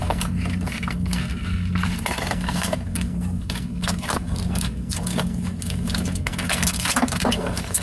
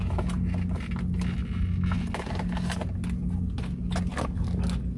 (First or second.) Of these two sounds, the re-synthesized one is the first